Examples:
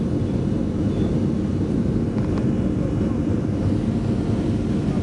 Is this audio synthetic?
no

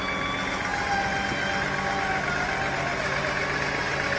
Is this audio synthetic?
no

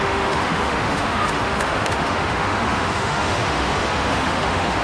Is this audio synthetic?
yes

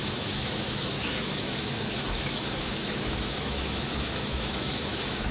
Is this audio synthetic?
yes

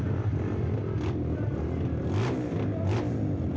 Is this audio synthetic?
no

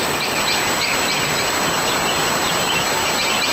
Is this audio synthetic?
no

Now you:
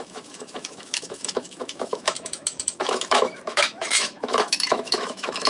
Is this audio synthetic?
yes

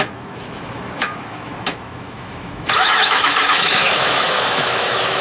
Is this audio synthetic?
yes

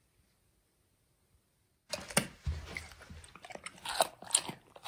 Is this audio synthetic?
no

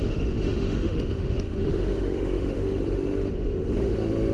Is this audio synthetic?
yes